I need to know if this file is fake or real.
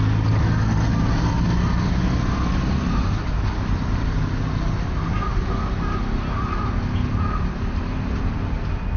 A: real